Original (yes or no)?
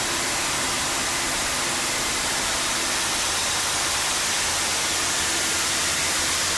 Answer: no